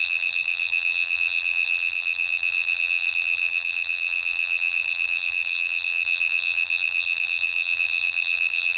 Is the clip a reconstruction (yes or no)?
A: yes